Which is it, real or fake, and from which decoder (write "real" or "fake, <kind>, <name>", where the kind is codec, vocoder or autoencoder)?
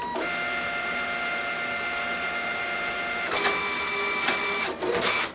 real